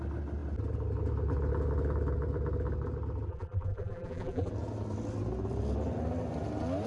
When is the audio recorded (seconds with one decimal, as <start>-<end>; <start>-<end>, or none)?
0.0-3.3; 4.5-6.9